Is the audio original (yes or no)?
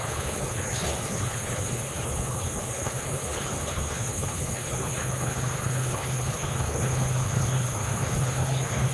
no